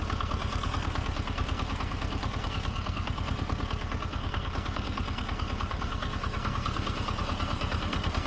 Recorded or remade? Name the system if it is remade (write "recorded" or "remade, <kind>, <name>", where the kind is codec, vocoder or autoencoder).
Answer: remade, codec, SNAC